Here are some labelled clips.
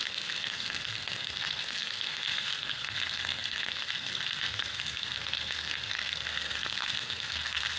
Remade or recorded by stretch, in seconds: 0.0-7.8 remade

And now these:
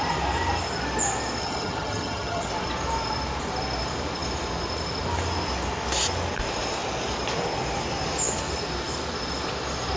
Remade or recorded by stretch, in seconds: 0.0-1.4 recorded; 1.4-2.5 remade; 2.5-10.0 recorded

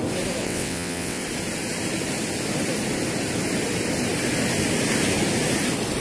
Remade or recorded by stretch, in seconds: 0.0-0.4 recorded; 0.4-1.2 remade; 1.2-6.0 recorded

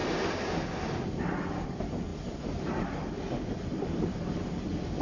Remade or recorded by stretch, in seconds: 0.0-5.0 recorded

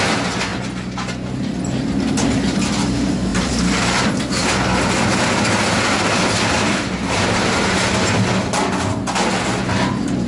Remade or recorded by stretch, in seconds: 0.0-3.3 recorded; 3.3-4.1 remade; 4.1-10.3 recorded

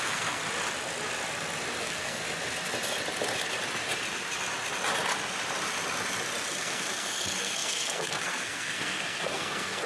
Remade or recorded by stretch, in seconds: 0.0-0.4 remade; 0.4-1.8 recorded; 1.8-2.2 remade; 2.2-6.6 recorded; 6.6-9.9 remade

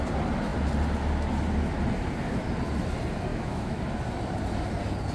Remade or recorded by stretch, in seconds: 0.0-3.3 recorded; 3.3-3.8 remade; 3.8-5.1 recorded